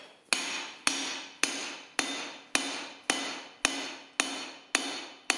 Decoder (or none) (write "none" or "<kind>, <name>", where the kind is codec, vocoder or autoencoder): none